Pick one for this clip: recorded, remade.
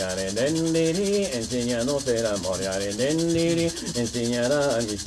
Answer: recorded